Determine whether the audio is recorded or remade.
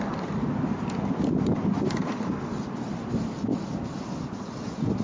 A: recorded